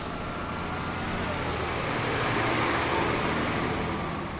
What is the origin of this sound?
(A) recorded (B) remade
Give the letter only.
A